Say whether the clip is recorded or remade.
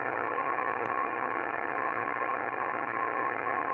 remade